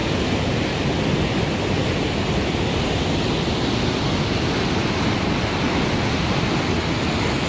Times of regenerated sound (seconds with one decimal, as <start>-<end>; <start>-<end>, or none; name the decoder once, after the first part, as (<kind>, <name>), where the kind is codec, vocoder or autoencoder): none